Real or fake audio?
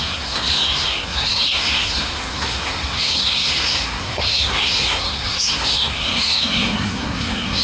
fake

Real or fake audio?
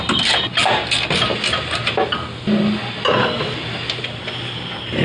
real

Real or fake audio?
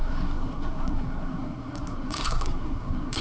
fake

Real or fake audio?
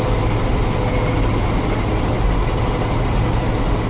real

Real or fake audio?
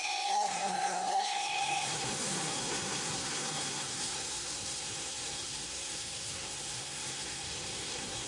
fake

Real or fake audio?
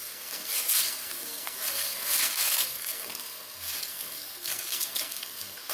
fake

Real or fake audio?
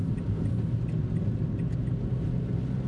real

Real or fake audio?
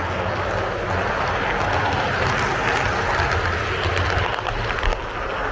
real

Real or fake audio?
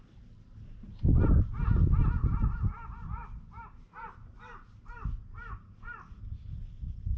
real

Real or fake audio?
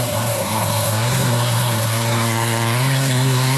fake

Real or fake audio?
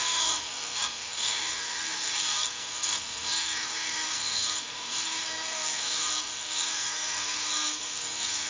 fake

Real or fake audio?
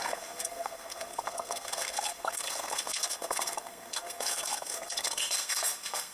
fake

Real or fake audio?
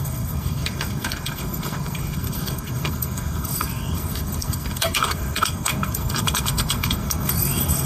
fake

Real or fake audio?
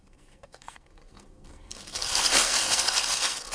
fake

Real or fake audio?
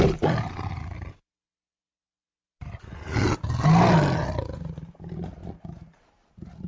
real